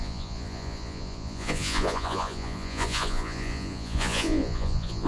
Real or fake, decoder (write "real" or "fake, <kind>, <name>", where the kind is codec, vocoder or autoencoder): fake, vocoder, Vocos